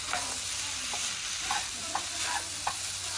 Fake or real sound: real